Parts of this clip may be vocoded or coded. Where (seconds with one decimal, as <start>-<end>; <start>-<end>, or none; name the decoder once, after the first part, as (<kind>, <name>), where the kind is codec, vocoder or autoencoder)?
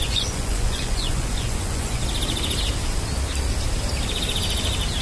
0.0-2.0 (vocoder, Vocos)